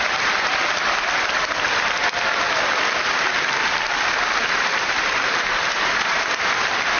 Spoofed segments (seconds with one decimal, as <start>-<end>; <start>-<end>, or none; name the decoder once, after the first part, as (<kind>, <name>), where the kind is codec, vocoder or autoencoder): 4.7-6.3 (vocoder, BigVGAN v2)

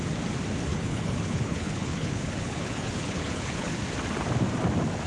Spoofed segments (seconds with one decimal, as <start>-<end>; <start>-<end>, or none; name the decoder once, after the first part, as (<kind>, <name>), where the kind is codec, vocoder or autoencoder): 0.7-3.8 (codec, HILCodec)

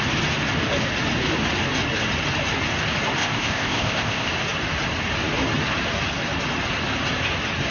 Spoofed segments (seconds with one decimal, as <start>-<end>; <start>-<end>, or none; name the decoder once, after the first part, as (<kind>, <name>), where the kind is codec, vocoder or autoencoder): 3.2-4.3 (codec, ZipCodec)

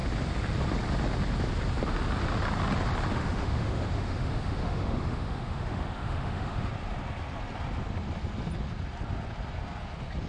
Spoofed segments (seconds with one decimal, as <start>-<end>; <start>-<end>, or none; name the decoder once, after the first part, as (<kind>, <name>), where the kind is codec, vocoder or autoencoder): 3.1-6.7 (autoencoder, DAC-VAE)

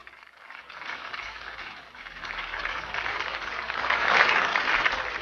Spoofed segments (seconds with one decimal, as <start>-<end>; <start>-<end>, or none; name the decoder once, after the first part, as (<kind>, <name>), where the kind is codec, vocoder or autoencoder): 0.0-4.5 (codec, DAC)

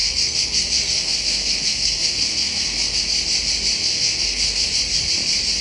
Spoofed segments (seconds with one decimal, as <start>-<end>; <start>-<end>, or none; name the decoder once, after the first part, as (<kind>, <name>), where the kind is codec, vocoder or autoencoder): 0.0-3.0 (codec, SNAC); 3.8-4.7

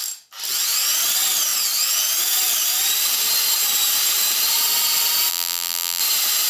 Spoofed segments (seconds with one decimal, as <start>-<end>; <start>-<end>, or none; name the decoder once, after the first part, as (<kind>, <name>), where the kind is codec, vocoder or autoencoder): 5.3-6.0 (vocoder, BigVGAN v2)

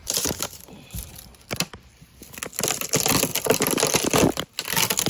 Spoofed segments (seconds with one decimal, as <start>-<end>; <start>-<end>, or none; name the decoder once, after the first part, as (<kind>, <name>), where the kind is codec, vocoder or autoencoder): 0.0-1.1 (vocoder, BigVGAN v2)